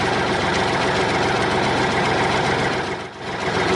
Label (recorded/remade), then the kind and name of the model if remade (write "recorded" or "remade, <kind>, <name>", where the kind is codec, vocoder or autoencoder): recorded